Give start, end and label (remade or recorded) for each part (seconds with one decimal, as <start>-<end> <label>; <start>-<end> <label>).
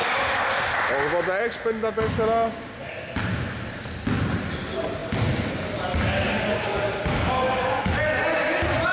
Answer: 0.0-8.9 recorded